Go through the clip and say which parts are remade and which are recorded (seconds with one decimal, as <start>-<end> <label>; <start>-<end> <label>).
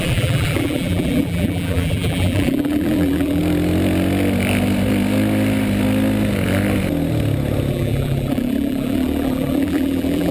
0.0-3.4 remade; 3.4-7.7 recorded; 7.7-10.3 remade